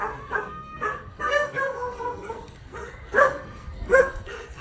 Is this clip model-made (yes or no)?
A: yes